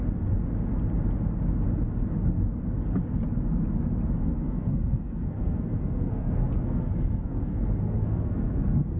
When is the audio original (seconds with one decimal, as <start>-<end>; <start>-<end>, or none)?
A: 0.0-4.2